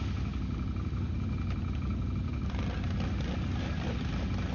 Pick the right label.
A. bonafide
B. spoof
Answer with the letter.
A